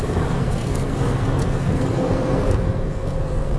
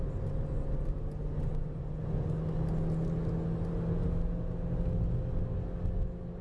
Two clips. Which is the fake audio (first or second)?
first